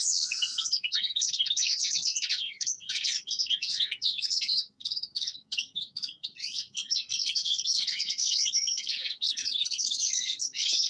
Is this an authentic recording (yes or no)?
no